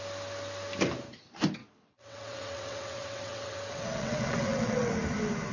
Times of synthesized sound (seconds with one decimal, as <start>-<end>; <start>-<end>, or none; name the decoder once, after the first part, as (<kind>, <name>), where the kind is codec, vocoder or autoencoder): 1.6-4.9 (vocoder, WaveNeXt)